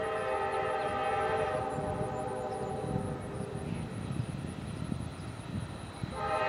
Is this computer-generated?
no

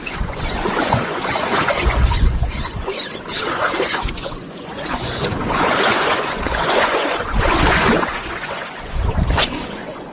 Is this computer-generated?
yes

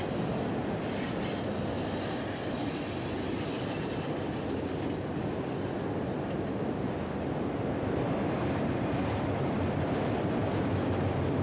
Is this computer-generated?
no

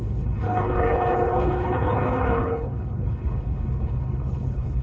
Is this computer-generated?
yes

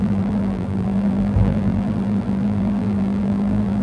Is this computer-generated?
yes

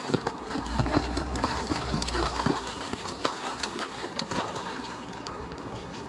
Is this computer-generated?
yes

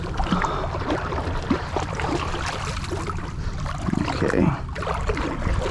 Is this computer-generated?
no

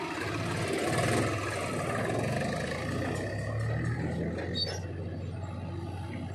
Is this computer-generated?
no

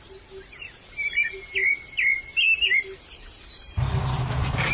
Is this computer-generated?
no